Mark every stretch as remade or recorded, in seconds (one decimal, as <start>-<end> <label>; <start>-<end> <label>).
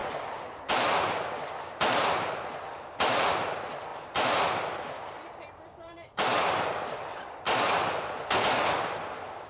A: 0.0-3.9 recorded; 3.9-8.3 remade; 8.3-9.5 recorded